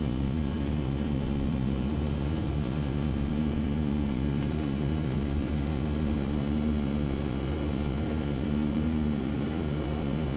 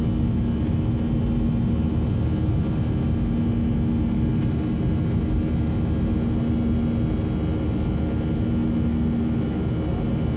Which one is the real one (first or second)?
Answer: second